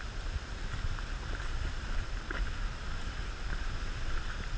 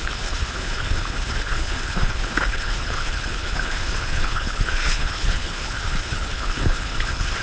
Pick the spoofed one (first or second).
second